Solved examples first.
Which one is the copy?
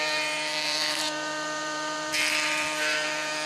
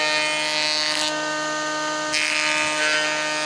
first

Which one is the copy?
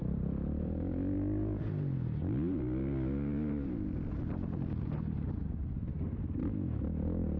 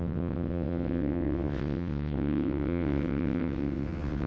second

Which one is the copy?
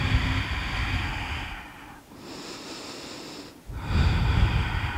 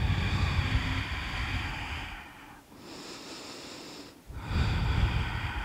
second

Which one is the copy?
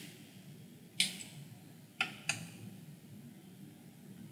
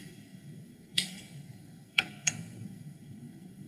second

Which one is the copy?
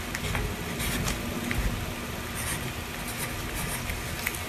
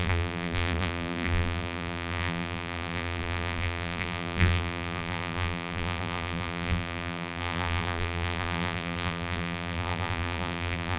second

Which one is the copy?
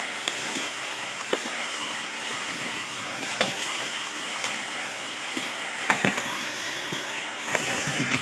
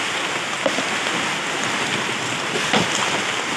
first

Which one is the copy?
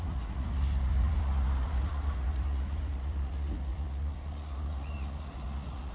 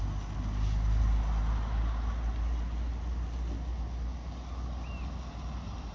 first